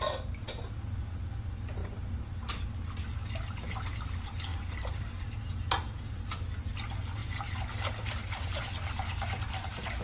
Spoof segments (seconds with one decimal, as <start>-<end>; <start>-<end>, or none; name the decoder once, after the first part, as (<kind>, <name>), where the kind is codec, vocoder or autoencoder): 1.8-2.3 (vocoder, BigVGAN v2); 4.5-5.2; 7.2-8.6